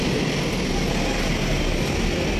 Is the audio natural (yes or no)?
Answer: yes